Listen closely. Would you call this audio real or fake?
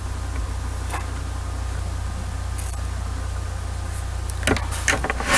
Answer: real